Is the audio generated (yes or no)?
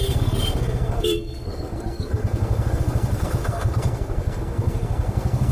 yes